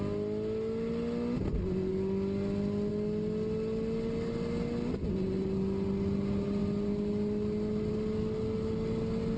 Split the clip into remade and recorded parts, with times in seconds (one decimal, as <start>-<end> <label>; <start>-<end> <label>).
0.0-9.4 recorded